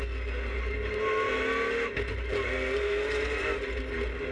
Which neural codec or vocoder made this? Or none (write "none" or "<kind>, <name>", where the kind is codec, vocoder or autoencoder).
none